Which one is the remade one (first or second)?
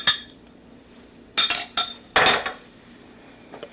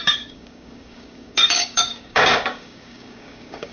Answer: second